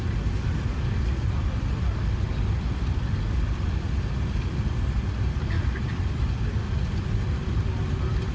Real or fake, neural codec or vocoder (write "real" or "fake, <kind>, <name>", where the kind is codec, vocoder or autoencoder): real